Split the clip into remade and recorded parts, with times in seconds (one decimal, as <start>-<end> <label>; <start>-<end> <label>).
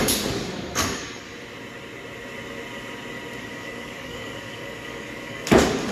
0.0-1.3 remade; 1.3-3.4 recorded; 3.4-5.9 remade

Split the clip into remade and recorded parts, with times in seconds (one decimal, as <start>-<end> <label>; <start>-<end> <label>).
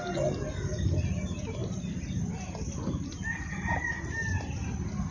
0.0-5.1 recorded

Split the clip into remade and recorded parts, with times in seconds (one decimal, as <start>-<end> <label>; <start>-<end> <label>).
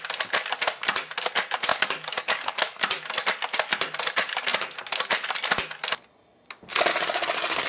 0.0-1.7 recorded; 1.7-2.6 remade; 2.6-6.9 recorded; 6.9-7.7 remade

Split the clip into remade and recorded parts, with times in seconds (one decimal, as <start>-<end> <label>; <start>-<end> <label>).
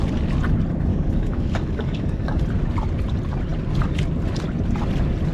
0.0-0.9 recorded; 0.9-2.4 remade; 2.4-5.3 recorded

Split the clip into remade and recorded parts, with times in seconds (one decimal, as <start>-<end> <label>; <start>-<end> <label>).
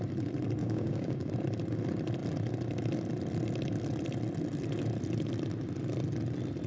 0.0-0.6 recorded; 0.6-1.3 remade; 1.3-6.7 recorded